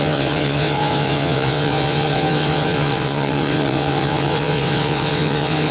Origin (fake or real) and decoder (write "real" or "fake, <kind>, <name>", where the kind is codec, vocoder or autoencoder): fake, vocoder, WaveNeXt